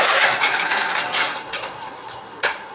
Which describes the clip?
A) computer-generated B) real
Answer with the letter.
A